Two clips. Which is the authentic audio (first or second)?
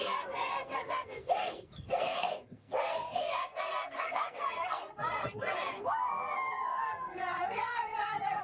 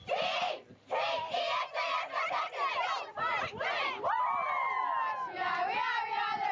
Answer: second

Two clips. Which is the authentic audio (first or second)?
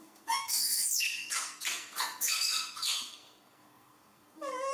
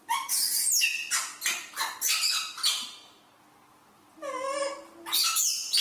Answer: second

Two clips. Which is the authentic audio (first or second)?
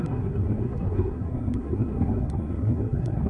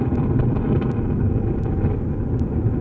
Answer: second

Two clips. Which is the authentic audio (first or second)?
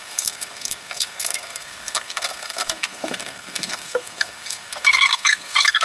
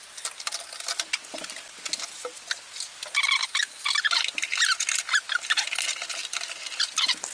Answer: second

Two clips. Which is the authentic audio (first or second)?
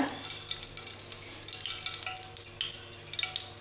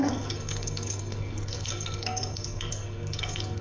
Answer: first